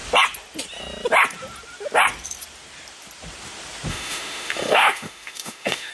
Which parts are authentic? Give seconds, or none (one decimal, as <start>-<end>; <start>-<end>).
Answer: 0.0-3.9